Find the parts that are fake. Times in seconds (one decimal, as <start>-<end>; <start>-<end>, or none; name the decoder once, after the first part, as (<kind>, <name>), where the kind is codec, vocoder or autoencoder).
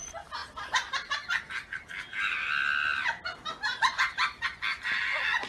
4.7-5.5 (vocoder, BigVGAN v2)